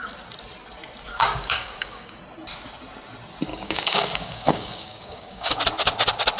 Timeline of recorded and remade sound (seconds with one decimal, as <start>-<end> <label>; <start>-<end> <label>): 0.0-1.1 recorded; 1.1-2.2 remade; 2.2-3.5 recorded; 3.5-5.6 remade; 5.6-6.4 recorded

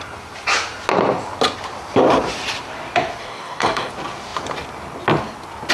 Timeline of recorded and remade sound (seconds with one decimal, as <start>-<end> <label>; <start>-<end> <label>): 0.0-3.2 recorded; 3.2-3.9 remade; 3.9-5.7 recorded

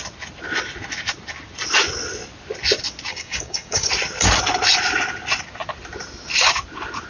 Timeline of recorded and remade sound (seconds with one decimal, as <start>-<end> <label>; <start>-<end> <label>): 0.0-3.1 recorded; 3.1-3.9 remade; 3.9-7.1 recorded

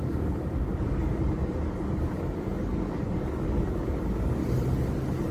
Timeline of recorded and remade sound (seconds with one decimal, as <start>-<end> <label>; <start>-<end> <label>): 0.0-4.4 remade; 4.4-5.3 recorded

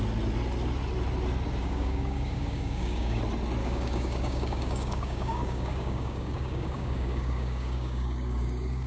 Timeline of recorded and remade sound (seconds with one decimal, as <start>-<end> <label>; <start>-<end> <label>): 0.0-1.6 recorded; 1.6-3.2 remade; 3.2-3.6 recorded; 3.6-8.9 remade

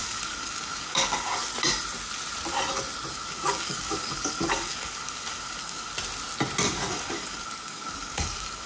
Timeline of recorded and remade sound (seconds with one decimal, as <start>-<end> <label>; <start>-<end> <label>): 0.0-1.4 remade; 1.4-3.1 recorded; 3.1-5.9 remade; 5.9-6.9 recorded; 6.9-8.7 remade

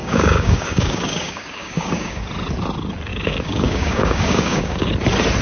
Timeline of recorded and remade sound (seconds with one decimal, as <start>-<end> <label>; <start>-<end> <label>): 0.0-2.2 remade; 2.2-3.1 recorded; 3.1-4.9 remade; 4.9-5.4 recorded